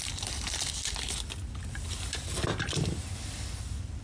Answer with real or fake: real